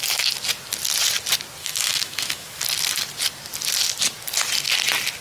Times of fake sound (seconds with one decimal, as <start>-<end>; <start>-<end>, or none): 1.6-2.6